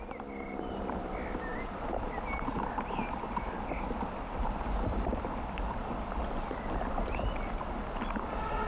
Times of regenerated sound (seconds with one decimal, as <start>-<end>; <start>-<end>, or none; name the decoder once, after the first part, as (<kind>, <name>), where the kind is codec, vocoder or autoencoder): none